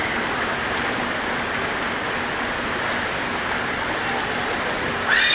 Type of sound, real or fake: real